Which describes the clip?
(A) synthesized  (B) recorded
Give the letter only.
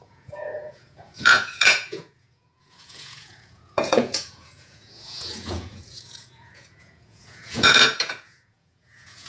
A